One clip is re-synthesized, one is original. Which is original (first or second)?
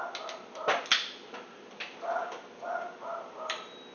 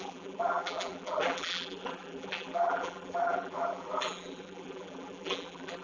first